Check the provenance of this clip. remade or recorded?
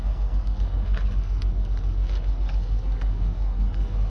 remade